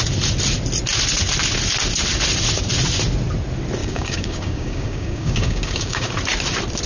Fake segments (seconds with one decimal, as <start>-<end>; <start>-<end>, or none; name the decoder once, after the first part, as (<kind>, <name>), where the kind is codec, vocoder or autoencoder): 3.8-6.1 (codec, DAC)